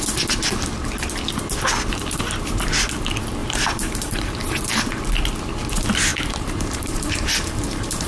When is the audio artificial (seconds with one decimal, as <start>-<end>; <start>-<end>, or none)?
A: 3.4-4.3; 6.1-8.1